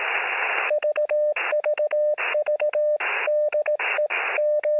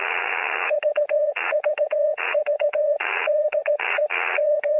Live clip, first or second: first